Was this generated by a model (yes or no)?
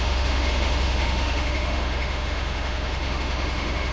yes